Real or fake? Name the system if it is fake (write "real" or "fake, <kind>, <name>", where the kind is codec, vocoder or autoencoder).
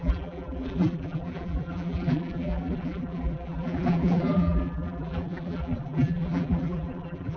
fake, vocoder, BigVGAN v2